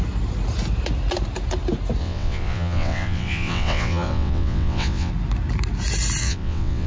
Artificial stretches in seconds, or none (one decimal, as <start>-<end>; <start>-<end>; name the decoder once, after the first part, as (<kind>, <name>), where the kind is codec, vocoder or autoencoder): 2.0-5.1 (vocoder, WaveNeXt); 6.2-6.9